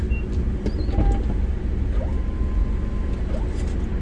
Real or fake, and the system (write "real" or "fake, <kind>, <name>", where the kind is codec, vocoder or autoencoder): real